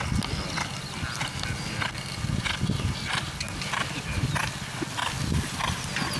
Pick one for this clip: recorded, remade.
recorded